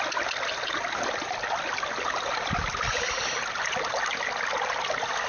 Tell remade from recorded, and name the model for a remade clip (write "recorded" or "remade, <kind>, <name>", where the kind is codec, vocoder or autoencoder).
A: recorded